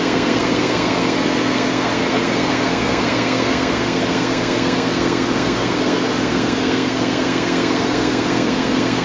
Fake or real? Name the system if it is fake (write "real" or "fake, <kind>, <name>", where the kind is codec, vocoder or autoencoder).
fake, codec, SNAC